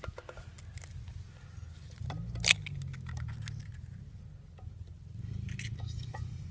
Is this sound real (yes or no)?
yes